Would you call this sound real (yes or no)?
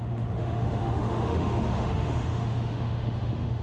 no